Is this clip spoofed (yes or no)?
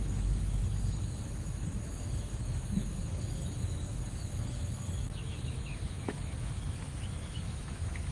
yes